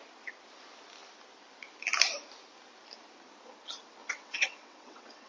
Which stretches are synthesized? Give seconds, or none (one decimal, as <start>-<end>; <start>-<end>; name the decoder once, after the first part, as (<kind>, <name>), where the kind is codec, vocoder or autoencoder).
4.0-5.3 (vocoder, WaveNeXt)

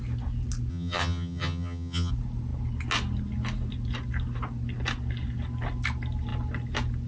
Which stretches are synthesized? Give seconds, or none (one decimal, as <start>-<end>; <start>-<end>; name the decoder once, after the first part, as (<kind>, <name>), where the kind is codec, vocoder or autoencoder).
0.7-2.1 (vocoder, HiFi-GAN)

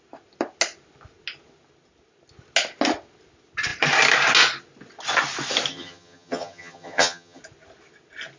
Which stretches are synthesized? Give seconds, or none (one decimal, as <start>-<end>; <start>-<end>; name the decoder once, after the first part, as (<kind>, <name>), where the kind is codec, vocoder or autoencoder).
5.7-7.4 (vocoder, HiFi-GAN)

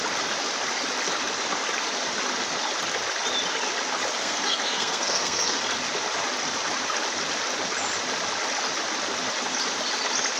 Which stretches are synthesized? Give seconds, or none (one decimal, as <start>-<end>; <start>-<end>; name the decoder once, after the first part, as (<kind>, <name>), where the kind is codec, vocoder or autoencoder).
4.2-5.6 (codec, SNAC)

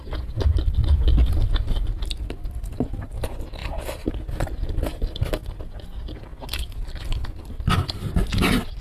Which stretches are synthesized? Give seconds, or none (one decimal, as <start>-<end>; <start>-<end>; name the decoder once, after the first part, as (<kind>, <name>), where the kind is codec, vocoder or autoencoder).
3.6-4.2 (vocoder, BigVGAN v2)

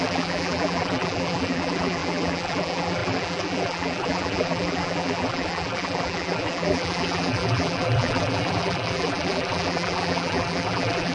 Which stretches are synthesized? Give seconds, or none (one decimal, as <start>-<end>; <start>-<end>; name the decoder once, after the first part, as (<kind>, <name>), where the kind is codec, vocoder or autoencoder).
0.0-11.1 (vocoder, BigVGAN v2)